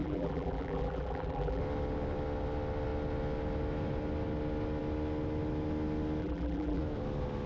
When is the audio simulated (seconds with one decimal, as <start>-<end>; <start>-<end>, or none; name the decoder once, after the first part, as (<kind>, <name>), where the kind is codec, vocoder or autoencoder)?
0.0-1.6 (vocoder, BigVGAN v2); 6.2-6.8